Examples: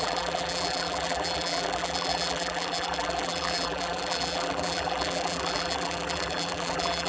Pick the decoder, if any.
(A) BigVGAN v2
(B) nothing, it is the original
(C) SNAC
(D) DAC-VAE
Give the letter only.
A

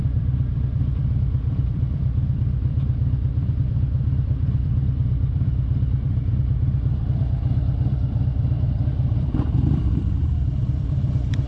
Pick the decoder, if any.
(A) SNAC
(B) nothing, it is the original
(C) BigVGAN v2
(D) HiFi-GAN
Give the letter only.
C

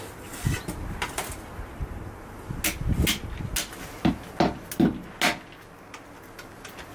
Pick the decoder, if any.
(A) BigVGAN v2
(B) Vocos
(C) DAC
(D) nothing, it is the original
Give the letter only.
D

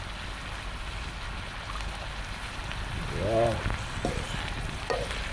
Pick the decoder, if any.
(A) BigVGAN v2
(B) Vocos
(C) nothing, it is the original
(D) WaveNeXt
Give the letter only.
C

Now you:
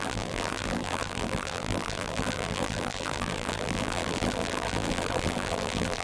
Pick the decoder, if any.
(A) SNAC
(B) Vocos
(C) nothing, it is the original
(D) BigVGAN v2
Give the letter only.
D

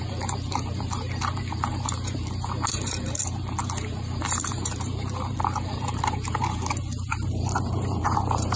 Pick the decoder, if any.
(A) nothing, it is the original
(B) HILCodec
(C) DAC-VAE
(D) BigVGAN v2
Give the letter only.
D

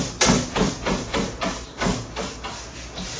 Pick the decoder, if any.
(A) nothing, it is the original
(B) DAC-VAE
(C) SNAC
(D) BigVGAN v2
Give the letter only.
A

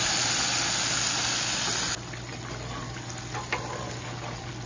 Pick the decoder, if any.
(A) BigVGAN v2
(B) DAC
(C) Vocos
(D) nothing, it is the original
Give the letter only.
D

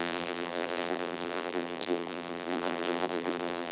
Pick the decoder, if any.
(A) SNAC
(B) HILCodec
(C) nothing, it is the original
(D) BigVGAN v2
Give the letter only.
D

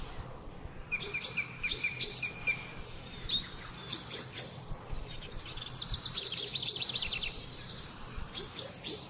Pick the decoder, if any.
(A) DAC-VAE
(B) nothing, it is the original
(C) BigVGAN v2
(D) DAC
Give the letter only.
C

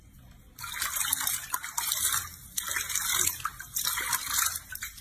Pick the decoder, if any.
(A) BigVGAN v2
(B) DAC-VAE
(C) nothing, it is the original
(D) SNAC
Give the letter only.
C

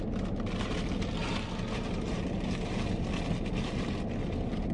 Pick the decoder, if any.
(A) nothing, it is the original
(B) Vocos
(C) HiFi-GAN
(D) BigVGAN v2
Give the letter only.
A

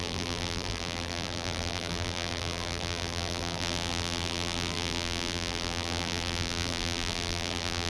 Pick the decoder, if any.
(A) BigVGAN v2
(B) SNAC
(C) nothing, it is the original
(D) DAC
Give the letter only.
A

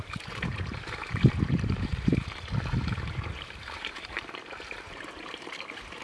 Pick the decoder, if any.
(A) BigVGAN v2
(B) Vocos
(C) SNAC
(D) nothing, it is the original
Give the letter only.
A